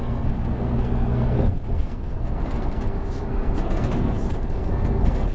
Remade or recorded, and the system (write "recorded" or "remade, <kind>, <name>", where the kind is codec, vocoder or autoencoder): remade, codec, SNAC